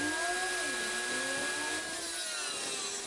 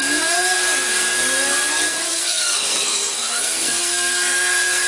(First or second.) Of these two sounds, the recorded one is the first